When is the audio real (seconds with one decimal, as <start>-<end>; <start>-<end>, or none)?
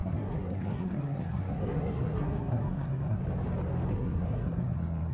3.2-3.9